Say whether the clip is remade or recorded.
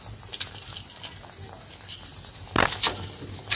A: recorded